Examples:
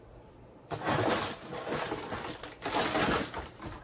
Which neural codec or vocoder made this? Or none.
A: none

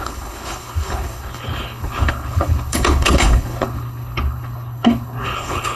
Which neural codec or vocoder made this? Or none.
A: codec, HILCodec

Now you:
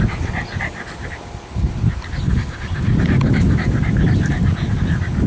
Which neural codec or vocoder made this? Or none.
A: none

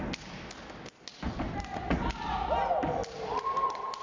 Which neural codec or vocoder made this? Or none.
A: none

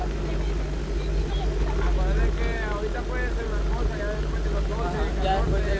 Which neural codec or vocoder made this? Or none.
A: none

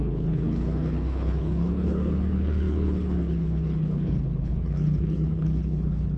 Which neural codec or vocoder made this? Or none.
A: codec, HILCodec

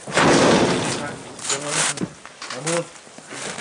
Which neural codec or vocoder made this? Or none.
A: none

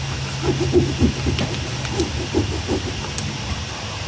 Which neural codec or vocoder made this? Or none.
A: none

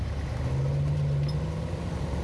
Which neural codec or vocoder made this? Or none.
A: none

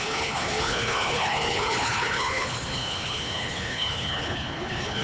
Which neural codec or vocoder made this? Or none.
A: codec, HILCodec